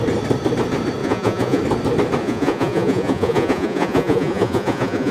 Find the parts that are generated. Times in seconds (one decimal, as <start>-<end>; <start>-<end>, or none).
1.0-1.6; 2.2-5.1